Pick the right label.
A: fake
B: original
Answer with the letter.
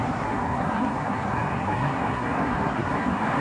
A